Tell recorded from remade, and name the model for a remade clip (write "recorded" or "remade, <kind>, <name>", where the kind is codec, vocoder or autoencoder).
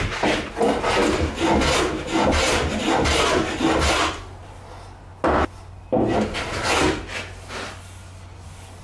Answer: recorded